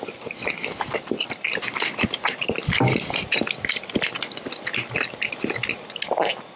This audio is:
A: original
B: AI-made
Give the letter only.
A